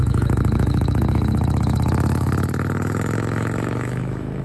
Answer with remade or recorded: remade